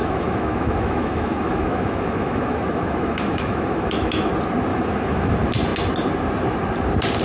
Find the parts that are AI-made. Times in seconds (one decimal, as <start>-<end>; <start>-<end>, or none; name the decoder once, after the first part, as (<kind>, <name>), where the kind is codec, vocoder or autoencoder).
0.0-4.3 (autoencoder, DAC-VAE); 4.7-5.3